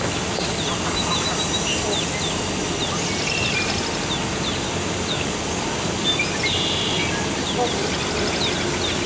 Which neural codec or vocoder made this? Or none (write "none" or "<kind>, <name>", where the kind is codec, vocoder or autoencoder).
none